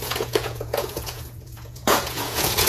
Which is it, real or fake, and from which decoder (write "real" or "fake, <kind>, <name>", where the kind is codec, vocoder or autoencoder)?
fake, vocoder, Vocos